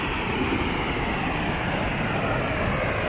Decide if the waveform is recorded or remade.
recorded